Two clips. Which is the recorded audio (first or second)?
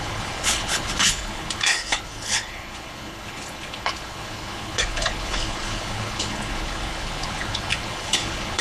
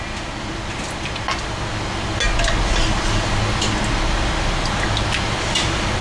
second